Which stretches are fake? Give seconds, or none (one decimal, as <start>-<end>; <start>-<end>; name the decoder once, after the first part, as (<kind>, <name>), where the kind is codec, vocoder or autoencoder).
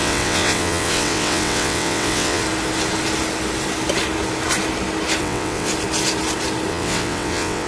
0.0-2.4 (vocoder, WaveNeXt); 5.2-5.7; 6.7-7.7